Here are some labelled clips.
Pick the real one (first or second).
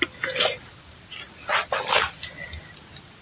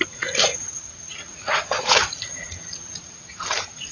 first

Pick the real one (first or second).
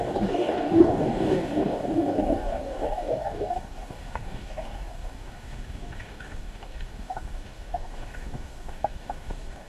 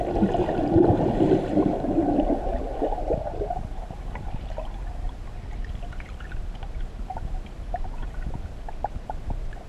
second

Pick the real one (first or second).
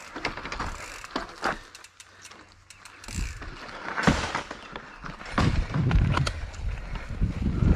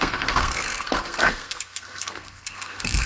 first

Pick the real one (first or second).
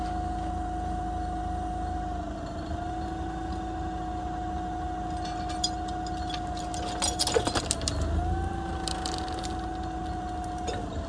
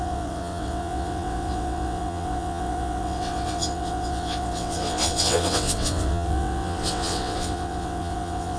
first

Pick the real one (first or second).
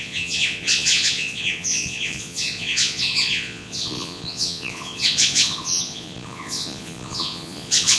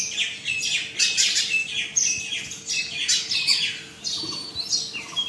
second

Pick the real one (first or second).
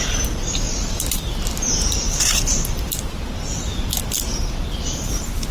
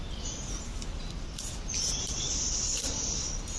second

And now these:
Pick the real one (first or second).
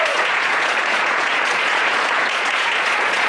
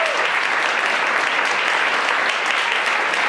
second